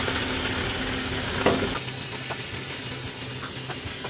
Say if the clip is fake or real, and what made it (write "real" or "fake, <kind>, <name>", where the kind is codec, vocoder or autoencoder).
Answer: real